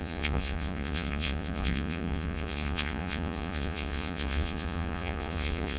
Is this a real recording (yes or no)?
no